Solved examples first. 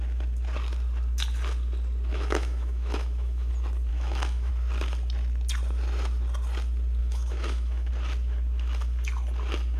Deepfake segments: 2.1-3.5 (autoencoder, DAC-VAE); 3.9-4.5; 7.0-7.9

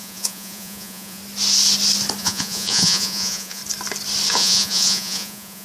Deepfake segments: 0.0-1.2 (vocoder, Vocos); 2.2-3.6; 4.3-5.6

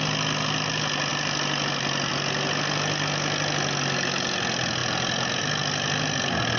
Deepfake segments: none

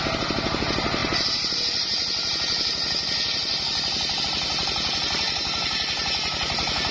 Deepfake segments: none

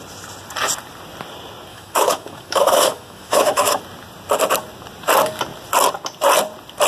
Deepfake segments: 1.7-3.8 (autoencoder, DAC-VAE)

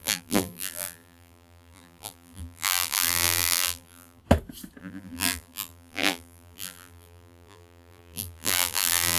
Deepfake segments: 0.0-4.2 (vocoder, BigVGAN v2); 4.8-9.2

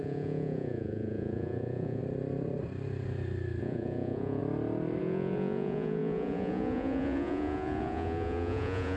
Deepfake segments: 0.0-2.0 (vocoder, Vocos); 3.6-4.4; 5.0-9.0

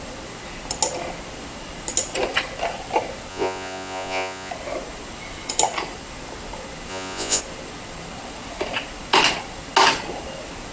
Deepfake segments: 3.3-4.5 (vocoder, Vocos); 6.9-7.4